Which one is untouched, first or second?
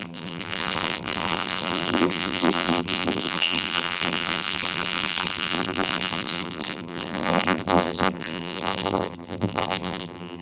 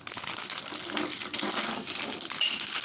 second